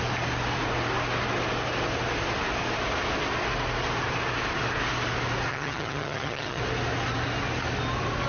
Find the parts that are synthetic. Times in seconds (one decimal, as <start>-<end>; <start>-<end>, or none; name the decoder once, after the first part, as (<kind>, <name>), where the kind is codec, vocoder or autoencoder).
5.5-6.6 (vocoder, HiFi-GAN)

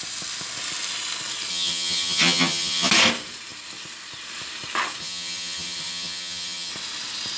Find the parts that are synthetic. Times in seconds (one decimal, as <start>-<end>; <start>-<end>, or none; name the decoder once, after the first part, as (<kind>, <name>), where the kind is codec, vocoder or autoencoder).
1.5-2.9 (vocoder, HiFi-GAN); 5.0-6.7

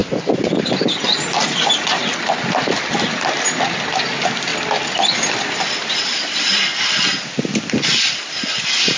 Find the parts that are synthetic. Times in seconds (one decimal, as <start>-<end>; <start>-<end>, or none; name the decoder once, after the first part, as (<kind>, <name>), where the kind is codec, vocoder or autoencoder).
none

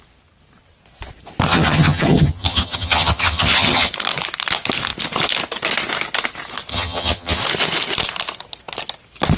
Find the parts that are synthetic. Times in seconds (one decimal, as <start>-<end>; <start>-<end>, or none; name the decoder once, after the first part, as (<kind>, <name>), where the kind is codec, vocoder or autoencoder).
1.5-3.9 (vocoder, HiFi-GAN); 6.7-7.4